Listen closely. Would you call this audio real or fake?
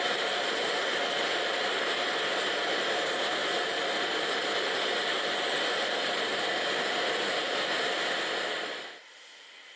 real